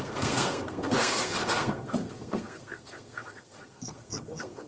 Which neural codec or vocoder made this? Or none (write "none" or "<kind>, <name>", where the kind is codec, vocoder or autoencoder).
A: codec, SNAC